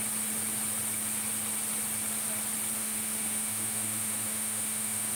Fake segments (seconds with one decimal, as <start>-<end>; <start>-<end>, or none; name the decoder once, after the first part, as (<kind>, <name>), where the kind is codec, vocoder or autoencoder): 2.8-5.1 (autoencoder, DAC-VAE)